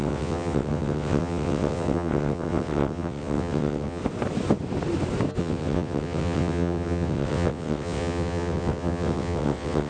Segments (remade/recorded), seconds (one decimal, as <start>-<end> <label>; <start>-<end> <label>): 0.0-4.0 remade; 4.0-5.4 recorded; 5.4-9.9 remade